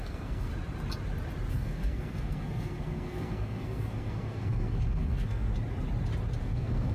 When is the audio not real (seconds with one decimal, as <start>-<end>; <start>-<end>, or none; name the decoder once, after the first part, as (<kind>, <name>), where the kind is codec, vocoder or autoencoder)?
0.0-0.5 (codec, SNAC); 1.5-5.5; 6.4-6.9